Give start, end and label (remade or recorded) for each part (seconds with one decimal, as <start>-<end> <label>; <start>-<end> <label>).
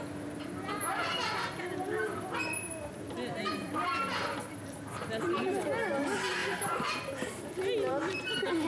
0.0-8.7 recorded